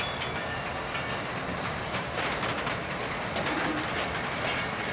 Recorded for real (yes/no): yes